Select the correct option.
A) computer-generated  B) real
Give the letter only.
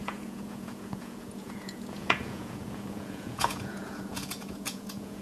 A